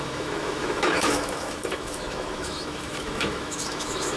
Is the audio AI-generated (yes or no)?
yes